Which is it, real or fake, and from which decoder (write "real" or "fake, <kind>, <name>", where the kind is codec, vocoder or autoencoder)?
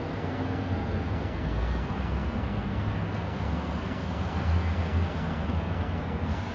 fake, codec, SNAC